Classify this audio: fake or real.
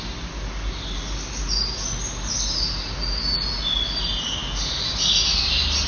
real